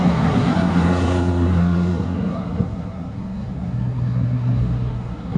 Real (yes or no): no